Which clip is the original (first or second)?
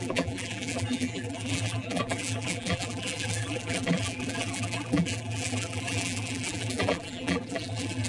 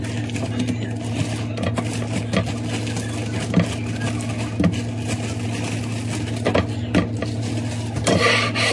second